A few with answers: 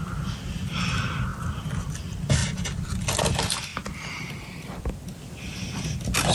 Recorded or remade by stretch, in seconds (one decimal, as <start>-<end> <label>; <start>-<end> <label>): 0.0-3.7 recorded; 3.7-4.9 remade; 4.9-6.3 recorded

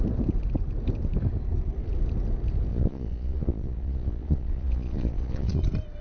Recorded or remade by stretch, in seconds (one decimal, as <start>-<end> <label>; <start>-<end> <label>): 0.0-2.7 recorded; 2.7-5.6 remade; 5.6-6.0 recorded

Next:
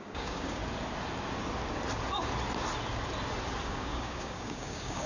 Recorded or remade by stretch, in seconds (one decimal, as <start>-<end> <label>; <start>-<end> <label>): 0.0-0.6 remade; 0.6-3.6 recorded; 3.6-5.1 remade